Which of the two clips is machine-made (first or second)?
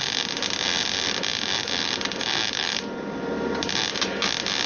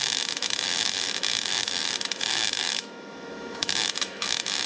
second